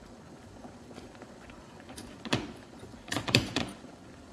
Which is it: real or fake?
fake